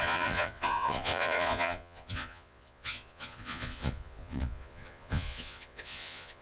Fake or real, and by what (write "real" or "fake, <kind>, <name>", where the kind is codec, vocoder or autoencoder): fake, vocoder, Vocos